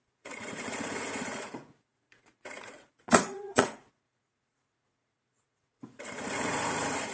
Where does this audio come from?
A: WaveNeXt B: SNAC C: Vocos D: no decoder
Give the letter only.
C